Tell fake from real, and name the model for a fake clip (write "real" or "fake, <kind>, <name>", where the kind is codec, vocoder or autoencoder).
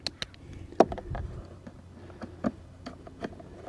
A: real